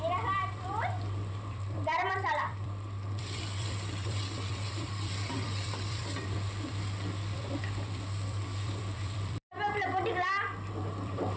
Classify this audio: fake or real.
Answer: fake